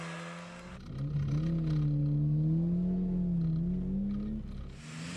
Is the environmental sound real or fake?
real